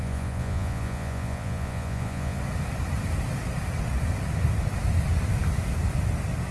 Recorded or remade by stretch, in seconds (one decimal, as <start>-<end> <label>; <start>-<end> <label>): 0.0-2.4 remade; 2.4-6.5 recorded